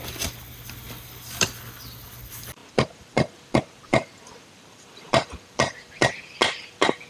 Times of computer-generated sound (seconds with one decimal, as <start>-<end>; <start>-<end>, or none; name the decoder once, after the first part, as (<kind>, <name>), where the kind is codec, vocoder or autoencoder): 0.0-7.1 (vocoder, BigVGAN v2)